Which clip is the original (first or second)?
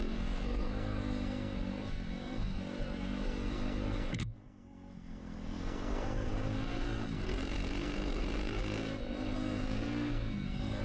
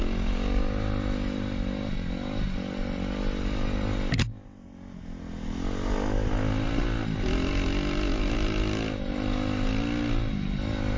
second